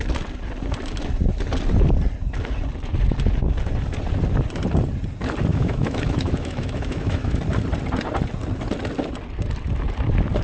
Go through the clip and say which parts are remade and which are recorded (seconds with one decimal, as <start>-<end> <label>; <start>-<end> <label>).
0.0-5.5 recorded; 5.5-7.4 remade; 7.4-10.4 recorded